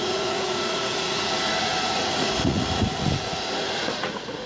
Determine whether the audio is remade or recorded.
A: remade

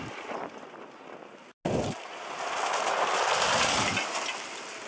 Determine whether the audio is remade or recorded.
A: recorded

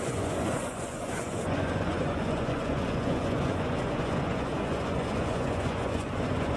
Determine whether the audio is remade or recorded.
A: remade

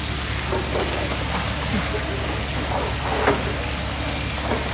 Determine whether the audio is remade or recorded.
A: recorded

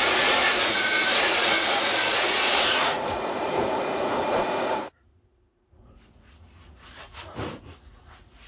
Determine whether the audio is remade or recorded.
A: remade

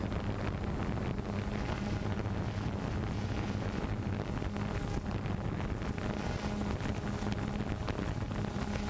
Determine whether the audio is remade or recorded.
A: recorded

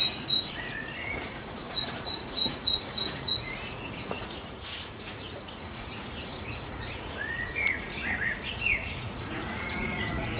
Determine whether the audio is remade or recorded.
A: remade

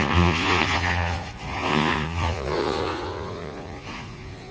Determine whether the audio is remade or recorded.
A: remade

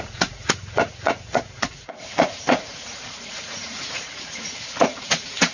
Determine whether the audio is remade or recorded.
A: remade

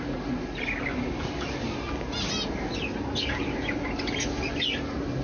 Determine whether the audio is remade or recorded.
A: recorded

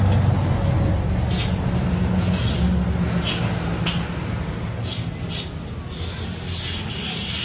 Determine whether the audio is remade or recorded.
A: recorded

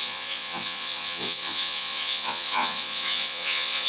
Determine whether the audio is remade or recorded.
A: remade